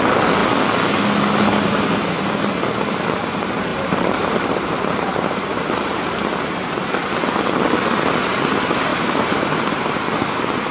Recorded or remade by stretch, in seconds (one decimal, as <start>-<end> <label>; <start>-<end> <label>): 0.0-3.7 recorded; 3.7-6.0 remade; 6.0-8.9 recorded; 8.9-10.0 remade; 10.0-10.7 recorded